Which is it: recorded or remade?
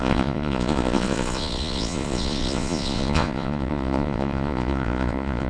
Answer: remade